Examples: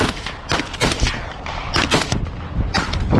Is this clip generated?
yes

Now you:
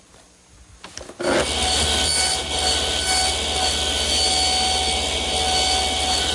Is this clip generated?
no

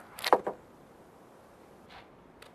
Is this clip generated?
no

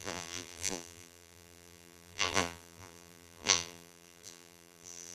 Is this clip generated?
yes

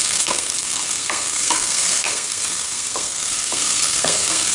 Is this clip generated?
yes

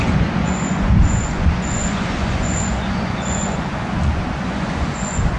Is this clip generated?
yes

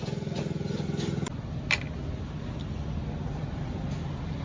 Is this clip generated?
no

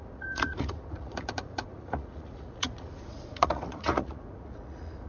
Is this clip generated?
yes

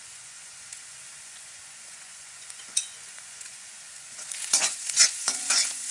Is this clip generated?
yes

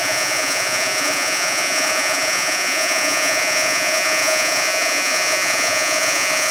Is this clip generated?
yes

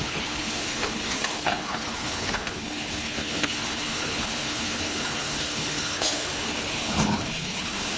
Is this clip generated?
yes